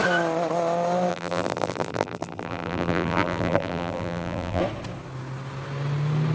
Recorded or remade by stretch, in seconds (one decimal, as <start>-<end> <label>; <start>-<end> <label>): 0.0-1.1 recorded; 1.1-4.6 remade; 4.6-6.3 recorded